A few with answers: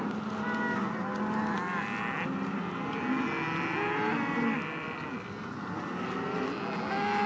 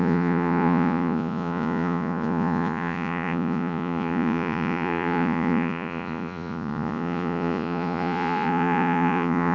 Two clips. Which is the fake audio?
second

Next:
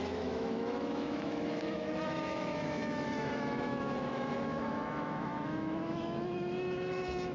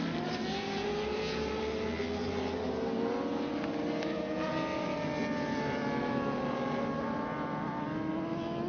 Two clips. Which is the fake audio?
first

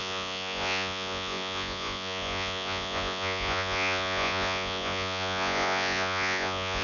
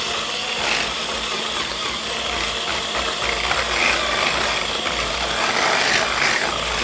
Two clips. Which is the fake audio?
first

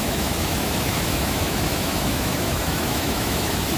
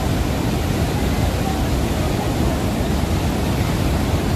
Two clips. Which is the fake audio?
first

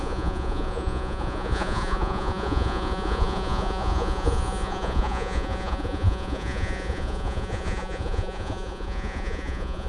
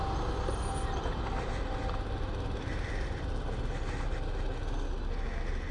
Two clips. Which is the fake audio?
first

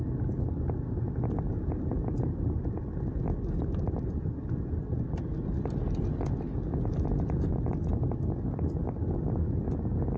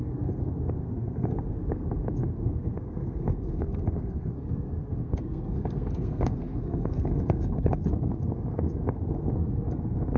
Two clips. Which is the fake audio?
second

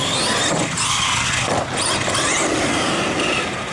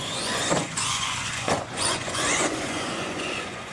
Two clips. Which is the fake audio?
second